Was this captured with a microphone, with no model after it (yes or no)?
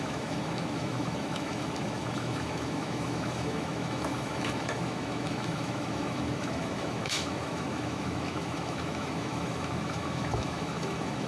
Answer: no